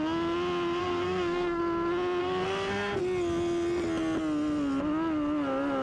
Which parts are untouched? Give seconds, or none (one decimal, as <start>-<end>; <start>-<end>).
0.0-0.8; 1.6-2.2; 3.0-5.8

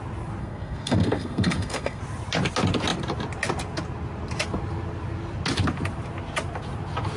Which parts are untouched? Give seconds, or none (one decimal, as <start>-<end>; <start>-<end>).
0.0-0.4; 2.0-7.2

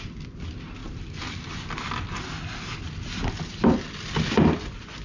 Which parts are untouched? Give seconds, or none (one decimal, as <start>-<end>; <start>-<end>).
0.0-5.0

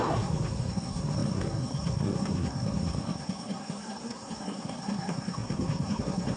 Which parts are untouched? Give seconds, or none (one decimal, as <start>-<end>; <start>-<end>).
none

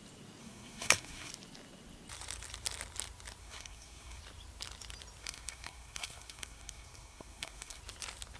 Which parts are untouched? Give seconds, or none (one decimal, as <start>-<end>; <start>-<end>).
0.0-0.4; 1.3-3.4; 4.2-5.2; 7.8-8.4

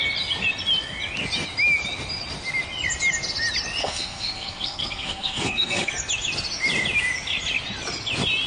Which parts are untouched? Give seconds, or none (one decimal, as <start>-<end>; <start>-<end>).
0.0-3.8; 5.9-8.5

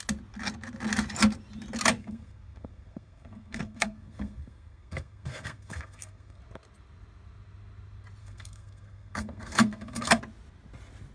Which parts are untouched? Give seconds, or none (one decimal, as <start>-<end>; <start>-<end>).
0.0-2.0; 6.4-8.2; 10.2-11.1

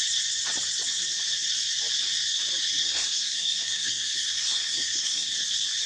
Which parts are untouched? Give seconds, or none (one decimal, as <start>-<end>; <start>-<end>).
0.0-2.8; 5.3-5.9